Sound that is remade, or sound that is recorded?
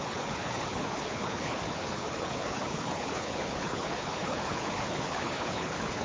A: remade